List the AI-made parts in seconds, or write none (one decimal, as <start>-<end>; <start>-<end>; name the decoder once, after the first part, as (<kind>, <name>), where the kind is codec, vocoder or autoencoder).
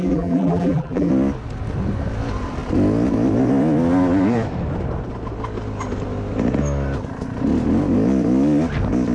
0.0-1.1 (vocoder, BigVGAN v2)